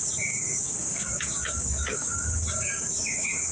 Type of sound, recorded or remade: remade